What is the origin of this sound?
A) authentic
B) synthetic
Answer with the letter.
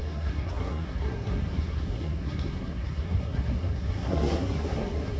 B